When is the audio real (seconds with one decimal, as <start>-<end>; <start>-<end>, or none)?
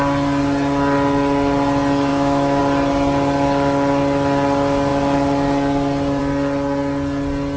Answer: 0.0-2.1; 2.6-7.6